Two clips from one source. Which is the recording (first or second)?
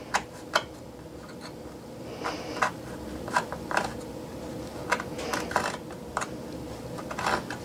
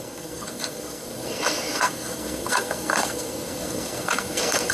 first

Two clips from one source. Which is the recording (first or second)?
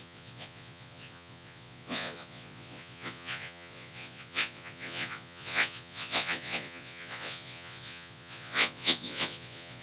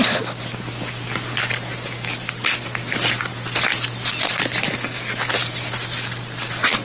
second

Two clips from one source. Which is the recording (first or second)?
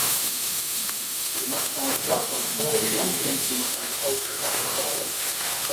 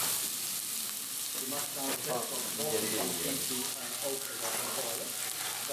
second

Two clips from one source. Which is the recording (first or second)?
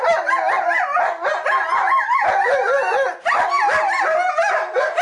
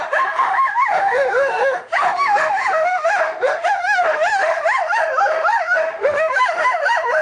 first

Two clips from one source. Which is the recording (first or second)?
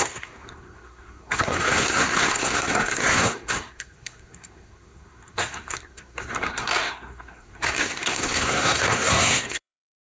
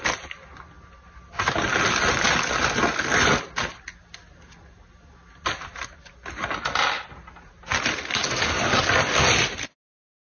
second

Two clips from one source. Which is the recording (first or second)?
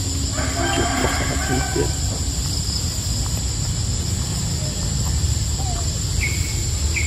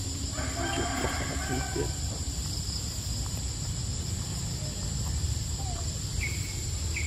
first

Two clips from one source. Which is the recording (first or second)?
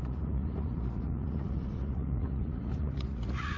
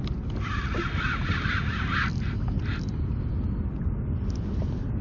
second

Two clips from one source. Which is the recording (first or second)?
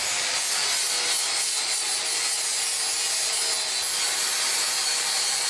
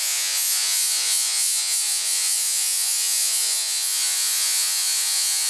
first